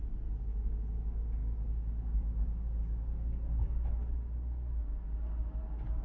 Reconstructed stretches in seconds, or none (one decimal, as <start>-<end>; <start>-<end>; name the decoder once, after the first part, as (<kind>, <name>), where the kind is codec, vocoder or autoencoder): none